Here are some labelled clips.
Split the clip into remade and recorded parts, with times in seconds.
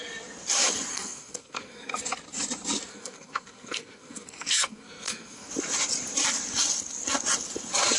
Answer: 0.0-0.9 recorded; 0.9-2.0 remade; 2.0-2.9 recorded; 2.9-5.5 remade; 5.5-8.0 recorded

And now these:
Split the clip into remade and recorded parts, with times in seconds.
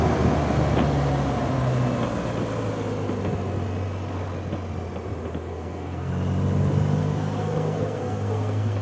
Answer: 0.0-5.5 recorded; 5.5-6.1 remade; 6.1-7.0 recorded; 7.0-8.8 remade